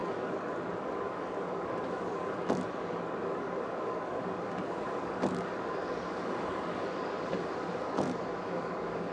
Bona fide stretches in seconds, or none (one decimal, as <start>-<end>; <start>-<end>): none